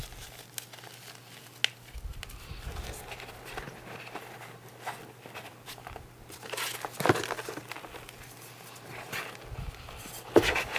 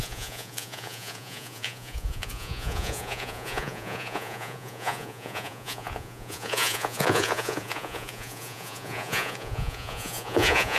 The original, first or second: first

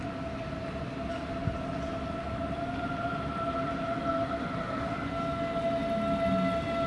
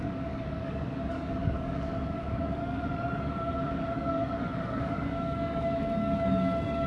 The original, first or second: first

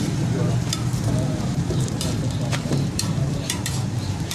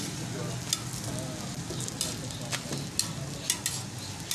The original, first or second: second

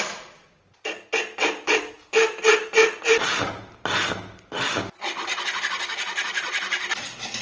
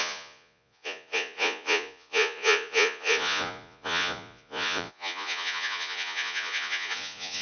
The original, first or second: first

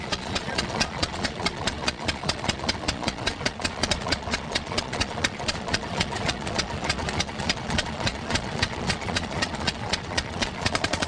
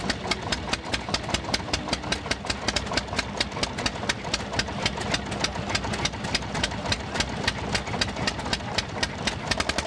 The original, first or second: second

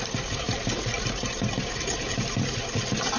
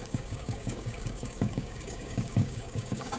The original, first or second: first